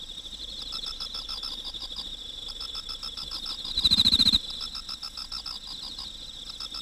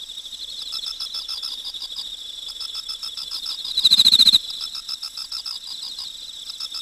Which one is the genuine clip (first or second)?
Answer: first